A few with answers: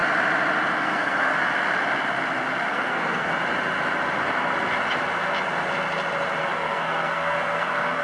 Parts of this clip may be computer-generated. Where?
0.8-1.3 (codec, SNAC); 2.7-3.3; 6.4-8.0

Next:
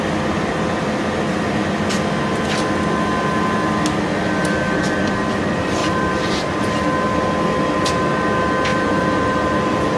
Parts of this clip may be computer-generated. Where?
5.8-6.6 (vocoder, BigVGAN v2); 8.7-10.0